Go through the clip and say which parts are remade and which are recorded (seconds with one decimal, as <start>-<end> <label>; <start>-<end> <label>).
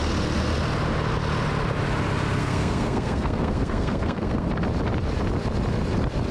0.0-2.4 recorded; 2.4-4.5 remade; 4.5-6.3 recorded